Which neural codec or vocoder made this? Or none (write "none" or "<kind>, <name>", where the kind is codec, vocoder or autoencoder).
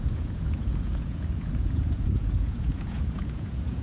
vocoder, Vocos